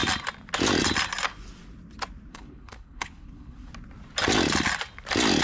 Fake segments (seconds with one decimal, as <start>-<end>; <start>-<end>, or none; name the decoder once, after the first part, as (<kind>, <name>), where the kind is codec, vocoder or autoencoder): 2.3-3.7 (codec, HILCodec)